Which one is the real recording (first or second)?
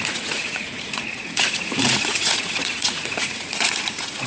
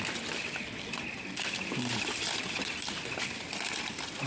second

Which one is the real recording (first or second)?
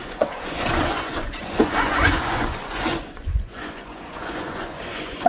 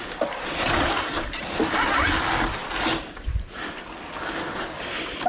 second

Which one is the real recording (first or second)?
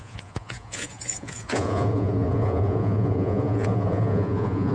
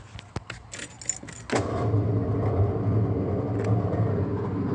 second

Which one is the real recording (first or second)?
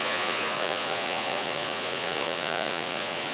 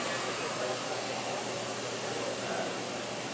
second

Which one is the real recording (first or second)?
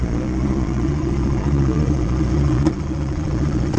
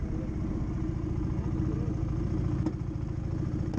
second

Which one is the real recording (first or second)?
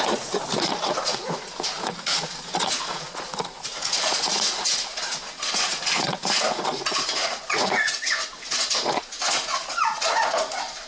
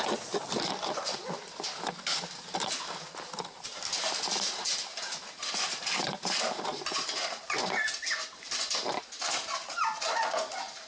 second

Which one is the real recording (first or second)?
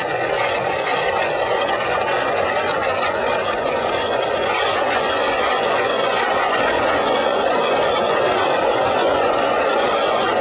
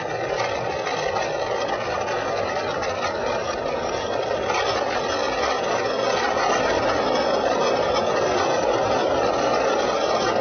second